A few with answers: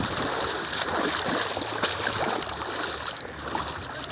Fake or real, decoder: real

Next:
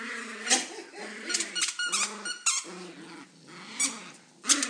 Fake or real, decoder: real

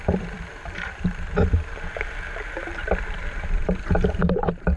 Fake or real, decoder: fake, vocoder, BigVGAN v2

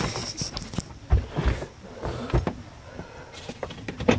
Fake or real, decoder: real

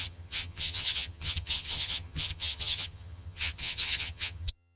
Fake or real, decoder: fake, vocoder, HiFi-GAN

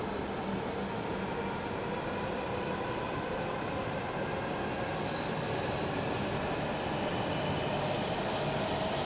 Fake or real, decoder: real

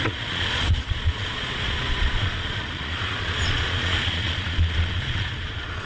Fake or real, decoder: fake, vocoder, Vocos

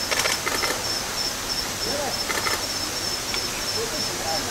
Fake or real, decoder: real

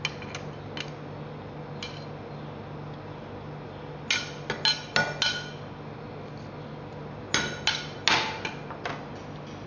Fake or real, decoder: real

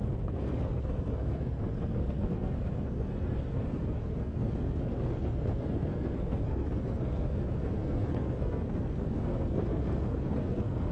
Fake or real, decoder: fake, codec, SNAC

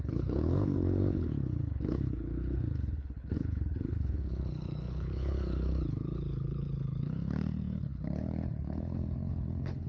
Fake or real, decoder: fake, codec, HILCodec